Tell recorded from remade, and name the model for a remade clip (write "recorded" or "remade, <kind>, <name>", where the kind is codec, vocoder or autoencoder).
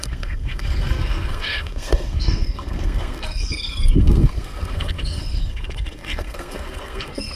remade, codec, SNAC